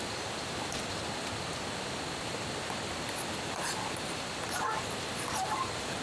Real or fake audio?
real